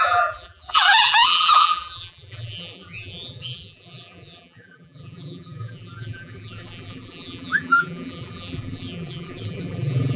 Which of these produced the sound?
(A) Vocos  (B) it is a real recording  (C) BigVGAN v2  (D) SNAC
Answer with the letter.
C